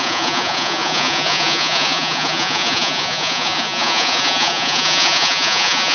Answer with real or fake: fake